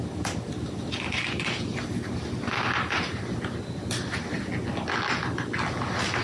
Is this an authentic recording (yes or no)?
yes